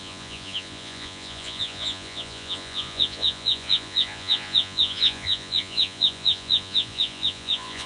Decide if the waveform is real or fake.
fake